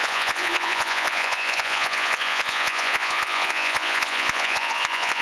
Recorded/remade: remade